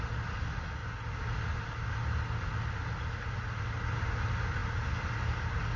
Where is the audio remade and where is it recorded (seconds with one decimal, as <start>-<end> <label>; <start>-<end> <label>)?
0.0-5.8 recorded